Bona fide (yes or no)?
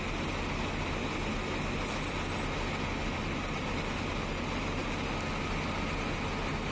yes